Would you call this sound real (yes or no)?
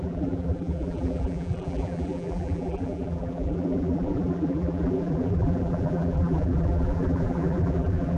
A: no